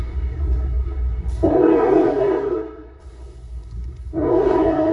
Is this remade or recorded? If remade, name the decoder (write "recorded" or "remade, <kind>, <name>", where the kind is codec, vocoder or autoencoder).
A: remade, codec, SNAC